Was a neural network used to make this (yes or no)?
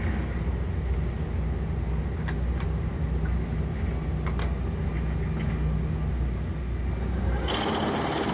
no